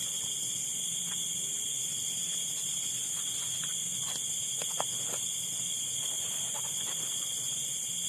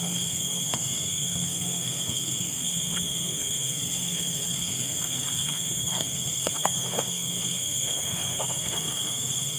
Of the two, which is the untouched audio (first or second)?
first